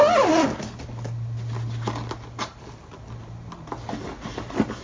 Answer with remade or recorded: recorded